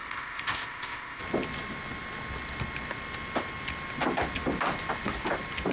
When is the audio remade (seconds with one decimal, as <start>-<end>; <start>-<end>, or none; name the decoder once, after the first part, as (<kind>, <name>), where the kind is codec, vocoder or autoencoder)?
0.0-1.2 (codec, ZipCodec)